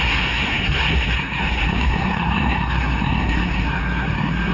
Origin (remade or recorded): remade